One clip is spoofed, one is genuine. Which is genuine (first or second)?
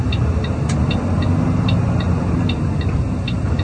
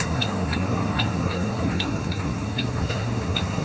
first